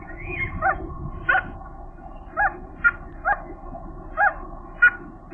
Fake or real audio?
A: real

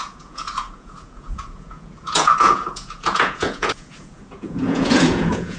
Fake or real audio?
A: fake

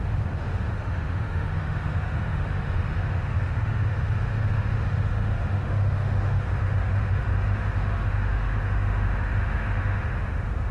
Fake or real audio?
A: fake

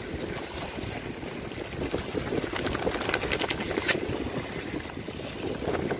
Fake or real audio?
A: real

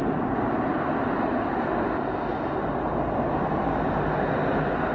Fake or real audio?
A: real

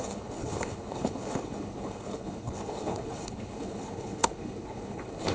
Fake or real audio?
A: fake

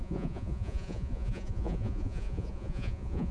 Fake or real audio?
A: fake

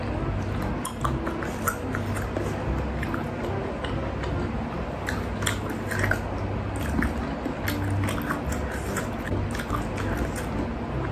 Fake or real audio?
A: real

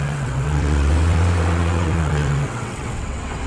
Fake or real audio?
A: fake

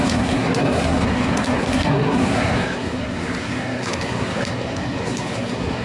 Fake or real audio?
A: fake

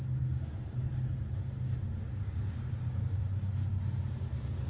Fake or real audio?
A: real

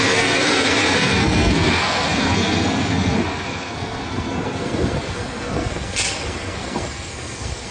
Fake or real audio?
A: fake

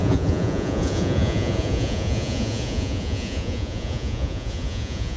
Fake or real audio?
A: fake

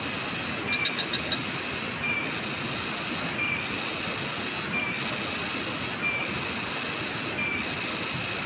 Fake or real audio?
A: real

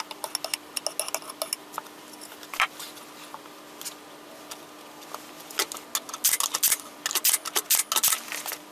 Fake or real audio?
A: real